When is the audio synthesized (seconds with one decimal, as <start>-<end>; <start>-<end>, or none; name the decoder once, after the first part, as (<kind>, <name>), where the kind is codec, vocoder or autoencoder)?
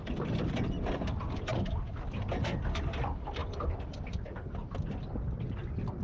1.5-2.2 (vocoder, BigVGAN v2)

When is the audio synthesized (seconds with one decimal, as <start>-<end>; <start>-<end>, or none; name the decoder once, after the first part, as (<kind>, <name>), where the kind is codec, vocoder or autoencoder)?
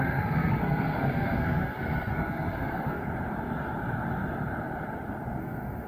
0.0-3.0 (codec, SNAC); 5.4-5.9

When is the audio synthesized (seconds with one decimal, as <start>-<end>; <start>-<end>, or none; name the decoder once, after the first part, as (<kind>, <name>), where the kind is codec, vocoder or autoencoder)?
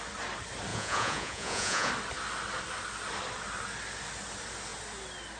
0.7-1.9 (vocoder, Vocos)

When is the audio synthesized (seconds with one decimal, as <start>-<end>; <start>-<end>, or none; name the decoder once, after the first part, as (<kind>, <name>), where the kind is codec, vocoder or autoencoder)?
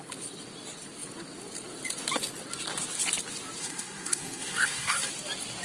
3.6-5.1 (codec, SNAC)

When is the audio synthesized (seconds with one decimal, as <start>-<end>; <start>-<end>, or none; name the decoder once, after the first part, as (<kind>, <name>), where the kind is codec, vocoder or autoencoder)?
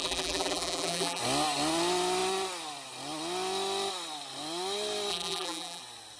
0.0-1.2 (vocoder, BigVGAN v2); 5.1-5.8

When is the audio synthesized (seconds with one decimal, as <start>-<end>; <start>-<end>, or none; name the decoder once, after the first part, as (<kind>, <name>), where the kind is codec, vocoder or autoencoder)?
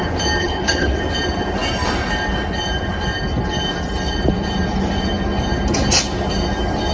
0.4-1.0 (codec, HILCodec)